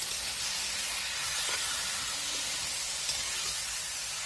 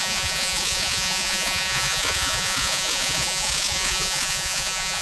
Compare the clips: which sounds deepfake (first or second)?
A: second